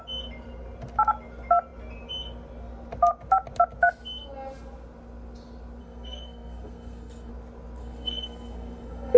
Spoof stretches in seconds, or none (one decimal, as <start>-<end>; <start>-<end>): 5.8-7.3; 7.8-9.2